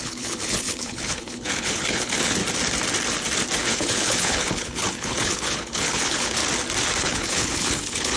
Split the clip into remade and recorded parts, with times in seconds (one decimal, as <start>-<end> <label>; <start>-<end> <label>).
0.0-2.4 remade; 2.4-3.6 recorded; 3.6-6.4 remade; 6.4-7.0 recorded; 7.0-8.2 remade